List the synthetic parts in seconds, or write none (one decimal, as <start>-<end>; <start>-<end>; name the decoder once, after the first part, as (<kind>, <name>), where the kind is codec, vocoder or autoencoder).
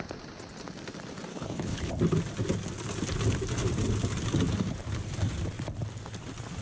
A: 1.3-1.9 (codec, HILCodec)